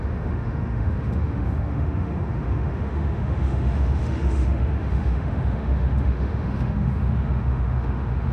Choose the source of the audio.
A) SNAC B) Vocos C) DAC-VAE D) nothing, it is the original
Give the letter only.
C